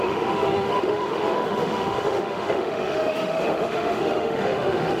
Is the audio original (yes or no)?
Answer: no